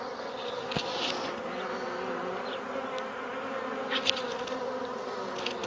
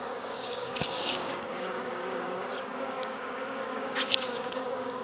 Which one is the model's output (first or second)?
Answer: second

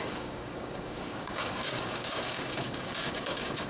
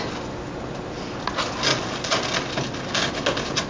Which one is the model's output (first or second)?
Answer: first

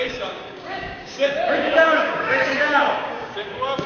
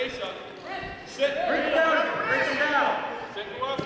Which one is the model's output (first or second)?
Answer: first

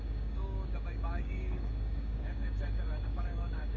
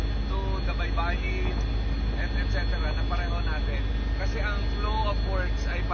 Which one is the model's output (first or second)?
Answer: first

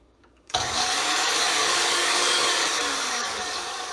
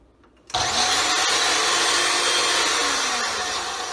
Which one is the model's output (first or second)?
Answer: first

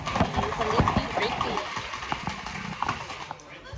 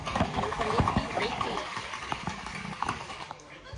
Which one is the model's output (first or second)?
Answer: second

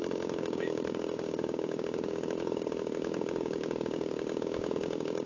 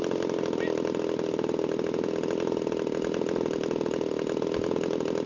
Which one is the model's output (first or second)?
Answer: first